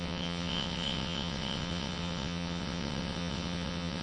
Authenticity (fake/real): fake